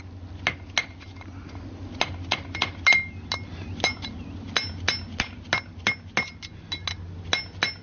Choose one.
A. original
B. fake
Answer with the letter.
A